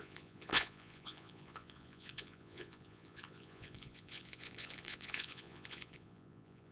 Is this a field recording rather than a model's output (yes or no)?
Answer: no